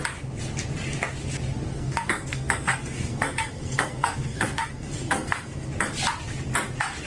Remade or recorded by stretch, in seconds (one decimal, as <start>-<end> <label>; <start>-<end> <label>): 0.0-1.7 recorded; 1.7-5.7 remade; 5.7-7.1 recorded